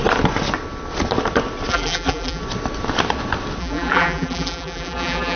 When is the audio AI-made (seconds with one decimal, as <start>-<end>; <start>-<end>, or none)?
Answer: 1.7-2.4; 3.6-5.4